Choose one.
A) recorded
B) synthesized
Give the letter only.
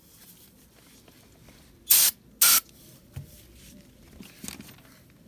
A